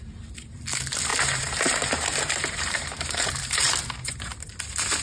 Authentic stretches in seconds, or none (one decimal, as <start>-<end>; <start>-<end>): 0.0-1.1; 4.1-5.0